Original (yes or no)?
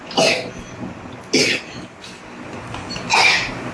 yes